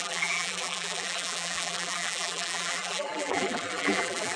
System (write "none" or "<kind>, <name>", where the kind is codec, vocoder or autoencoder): vocoder, BigVGAN v2